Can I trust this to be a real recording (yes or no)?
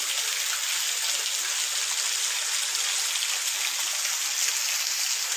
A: yes